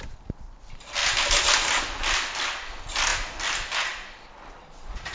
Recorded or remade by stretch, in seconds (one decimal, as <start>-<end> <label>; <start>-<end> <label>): 0.0-1.0 remade; 1.0-1.8 recorded; 1.8-3.1 remade; 3.1-4.3 recorded; 4.3-5.1 remade

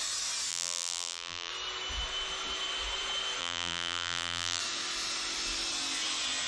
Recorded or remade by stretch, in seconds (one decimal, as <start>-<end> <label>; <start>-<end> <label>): 0.0-0.5 recorded; 0.5-1.5 remade; 1.5-3.4 recorded; 3.4-4.6 remade; 4.6-6.5 recorded